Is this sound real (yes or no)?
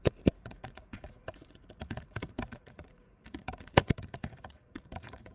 no